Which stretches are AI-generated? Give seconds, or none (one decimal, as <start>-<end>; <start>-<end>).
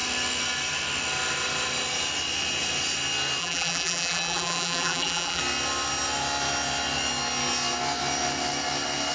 3.4-5.4